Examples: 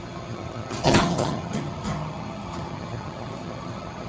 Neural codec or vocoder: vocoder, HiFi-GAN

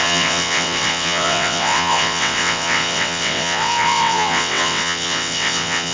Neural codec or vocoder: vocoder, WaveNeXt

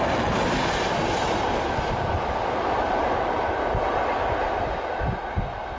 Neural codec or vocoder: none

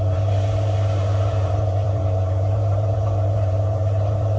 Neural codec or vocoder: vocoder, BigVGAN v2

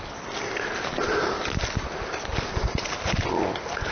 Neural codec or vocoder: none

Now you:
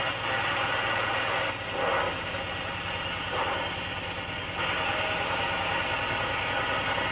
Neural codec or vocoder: none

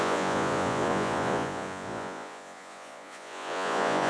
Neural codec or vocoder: vocoder, Vocos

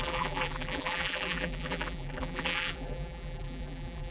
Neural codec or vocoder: vocoder, BigVGAN v2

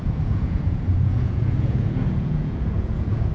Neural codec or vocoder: vocoder, Vocos